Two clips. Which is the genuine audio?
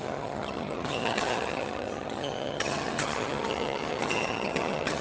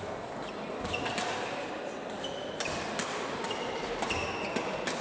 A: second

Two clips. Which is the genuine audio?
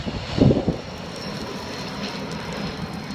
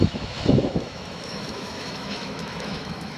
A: first